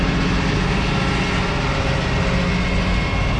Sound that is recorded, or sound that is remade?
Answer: recorded